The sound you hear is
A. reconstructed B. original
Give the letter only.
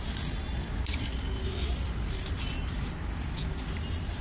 B